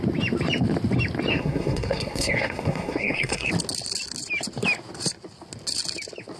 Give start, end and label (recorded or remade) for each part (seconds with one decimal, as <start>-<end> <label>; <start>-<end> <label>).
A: 0.0-1.3 recorded; 1.3-3.5 remade; 3.5-6.4 recorded